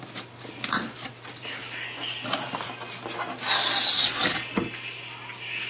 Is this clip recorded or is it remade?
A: recorded